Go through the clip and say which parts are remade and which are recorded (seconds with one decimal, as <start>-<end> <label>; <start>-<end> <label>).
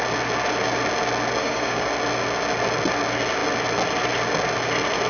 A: 0.0-1.4 recorded; 1.4-1.9 remade; 1.9-5.1 recorded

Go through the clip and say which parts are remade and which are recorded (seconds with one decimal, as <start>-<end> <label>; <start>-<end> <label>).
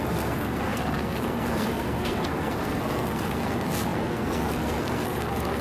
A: 0.0-5.6 remade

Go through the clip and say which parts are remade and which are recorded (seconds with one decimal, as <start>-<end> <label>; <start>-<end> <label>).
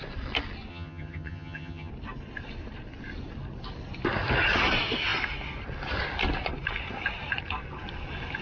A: 0.0-0.7 recorded; 0.7-1.9 remade; 1.9-8.4 recorded